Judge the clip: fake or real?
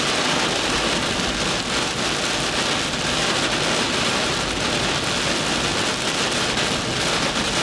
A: real